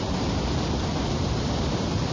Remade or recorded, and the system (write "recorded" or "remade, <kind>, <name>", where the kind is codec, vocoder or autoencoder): recorded